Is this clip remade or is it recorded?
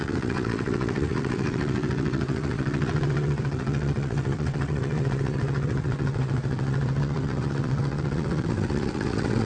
remade